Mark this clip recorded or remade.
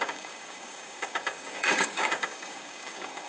remade